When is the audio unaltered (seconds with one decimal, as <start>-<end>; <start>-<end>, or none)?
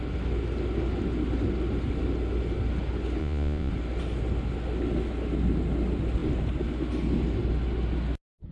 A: 0.0-3.2; 3.7-8.5